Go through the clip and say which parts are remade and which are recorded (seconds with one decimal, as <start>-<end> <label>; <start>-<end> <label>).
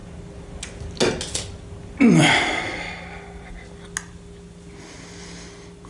0.0-5.9 recorded